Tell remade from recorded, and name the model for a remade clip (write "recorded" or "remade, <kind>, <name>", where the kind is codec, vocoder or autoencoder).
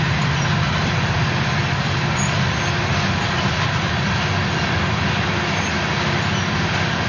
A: recorded